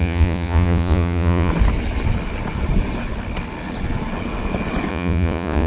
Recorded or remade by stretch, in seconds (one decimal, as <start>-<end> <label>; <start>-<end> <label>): 0.0-1.5 remade; 1.5-4.9 recorded; 4.9-5.7 remade